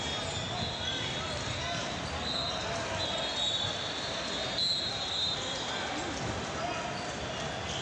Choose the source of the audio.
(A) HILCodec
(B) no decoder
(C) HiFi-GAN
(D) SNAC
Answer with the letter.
B